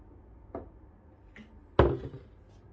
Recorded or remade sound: recorded